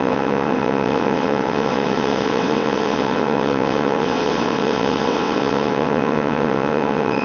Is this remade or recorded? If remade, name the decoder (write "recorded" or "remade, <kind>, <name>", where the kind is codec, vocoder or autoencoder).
remade, vocoder, WaveNeXt